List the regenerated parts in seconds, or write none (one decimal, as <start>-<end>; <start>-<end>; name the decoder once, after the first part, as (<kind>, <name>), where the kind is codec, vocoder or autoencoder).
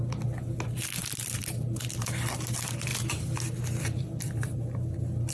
1.0-2.3 (vocoder, BigVGAN v2); 2.9-4.6